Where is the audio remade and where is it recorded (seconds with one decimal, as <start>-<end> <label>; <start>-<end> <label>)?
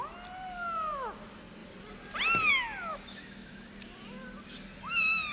0.0-2.9 recorded; 2.9-3.7 remade; 3.7-5.3 recorded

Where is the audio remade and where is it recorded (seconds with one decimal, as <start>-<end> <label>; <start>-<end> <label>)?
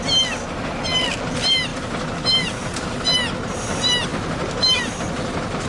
0.0-5.7 recorded